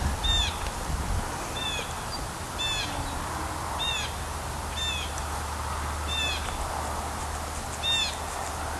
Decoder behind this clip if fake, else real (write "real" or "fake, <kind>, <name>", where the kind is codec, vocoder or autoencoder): real